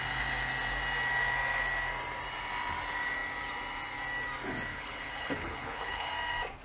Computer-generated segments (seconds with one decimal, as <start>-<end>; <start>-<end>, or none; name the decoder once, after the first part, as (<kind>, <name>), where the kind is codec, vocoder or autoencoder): 4.7-6.1 (codec, HILCodec)